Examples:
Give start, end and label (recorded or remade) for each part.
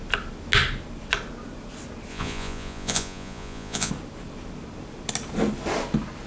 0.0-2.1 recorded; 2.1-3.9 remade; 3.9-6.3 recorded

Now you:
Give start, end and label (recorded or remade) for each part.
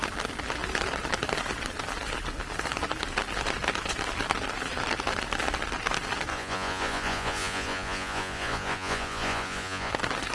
0.0-6.3 recorded; 6.3-9.9 remade; 9.9-10.3 recorded